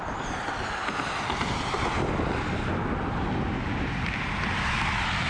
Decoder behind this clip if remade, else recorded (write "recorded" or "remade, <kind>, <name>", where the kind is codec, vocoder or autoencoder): recorded